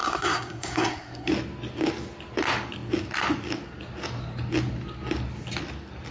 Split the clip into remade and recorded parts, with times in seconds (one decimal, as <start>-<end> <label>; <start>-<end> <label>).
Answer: 0.0-1.3 remade; 1.3-6.1 recorded